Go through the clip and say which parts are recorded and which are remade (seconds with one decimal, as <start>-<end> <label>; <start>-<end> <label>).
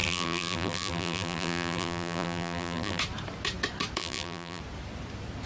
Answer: 0.0-3.0 remade; 3.0-4.0 recorded; 4.0-4.6 remade; 4.6-5.5 recorded